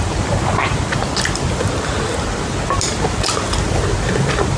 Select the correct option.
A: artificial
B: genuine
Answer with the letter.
B